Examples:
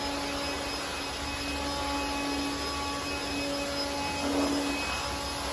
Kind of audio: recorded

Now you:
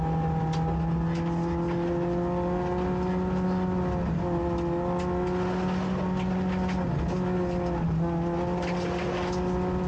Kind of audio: recorded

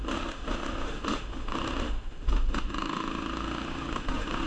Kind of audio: remade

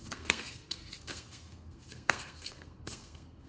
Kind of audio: remade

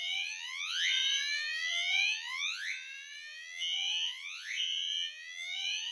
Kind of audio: remade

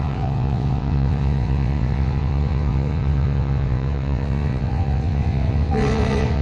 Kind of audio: remade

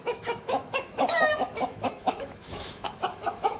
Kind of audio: remade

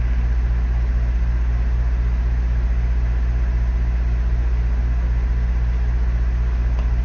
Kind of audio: recorded